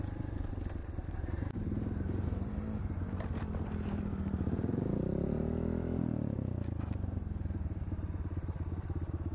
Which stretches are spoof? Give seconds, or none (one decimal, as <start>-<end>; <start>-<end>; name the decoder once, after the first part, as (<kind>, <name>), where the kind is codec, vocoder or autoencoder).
0.8-2.5 (vocoder, BigVGAN v2)